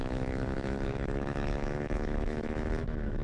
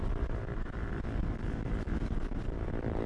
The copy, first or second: first